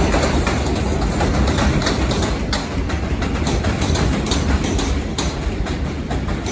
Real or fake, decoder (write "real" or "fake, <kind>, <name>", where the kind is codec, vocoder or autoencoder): fake, vocoder, BigVGAN v2